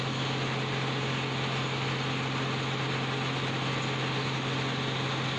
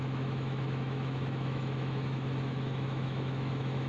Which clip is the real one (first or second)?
first